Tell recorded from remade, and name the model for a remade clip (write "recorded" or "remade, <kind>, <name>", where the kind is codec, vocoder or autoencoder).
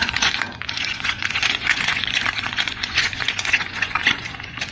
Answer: remade, vocoder, Vocos